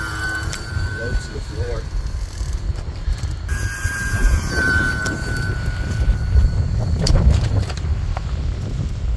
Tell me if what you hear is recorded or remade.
remade